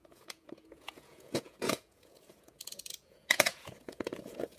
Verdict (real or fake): fake